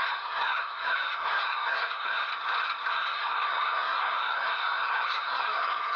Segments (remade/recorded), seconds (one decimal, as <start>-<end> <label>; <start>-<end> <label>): 0.0-2.3 remade; 2.3-2.9 recorded; 2.9-6.0 remade